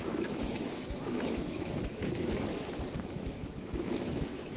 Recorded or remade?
remade